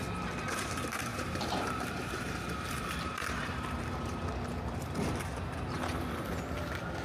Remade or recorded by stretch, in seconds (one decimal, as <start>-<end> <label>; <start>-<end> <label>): 0.0-1.1 recorded; 1.1-5.2 remade; 5.2-7.0 recorded